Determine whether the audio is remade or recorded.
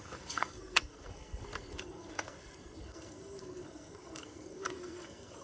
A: remade